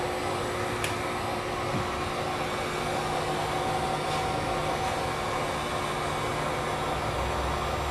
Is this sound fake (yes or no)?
no